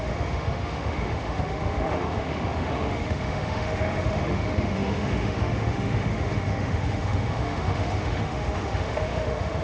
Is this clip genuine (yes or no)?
no